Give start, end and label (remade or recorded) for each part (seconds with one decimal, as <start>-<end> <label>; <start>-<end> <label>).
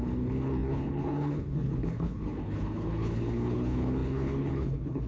0.0-5.1 remade